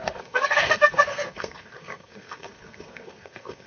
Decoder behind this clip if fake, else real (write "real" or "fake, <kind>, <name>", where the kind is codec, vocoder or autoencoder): fake, codec, SNAC